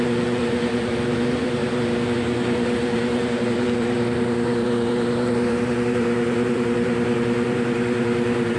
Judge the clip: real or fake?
fake